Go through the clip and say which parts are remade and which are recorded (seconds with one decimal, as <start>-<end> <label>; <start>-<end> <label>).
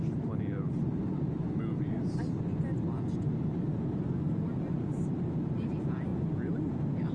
0.0-7.1 recorded